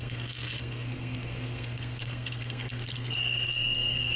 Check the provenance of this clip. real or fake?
fake